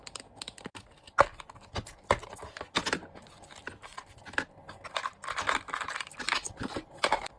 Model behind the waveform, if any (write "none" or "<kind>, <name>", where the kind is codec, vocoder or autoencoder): none